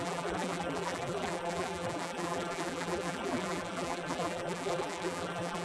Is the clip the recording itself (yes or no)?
no